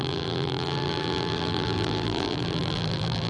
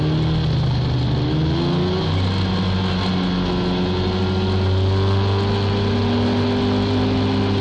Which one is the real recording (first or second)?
second